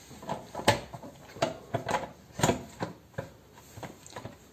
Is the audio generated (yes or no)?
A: no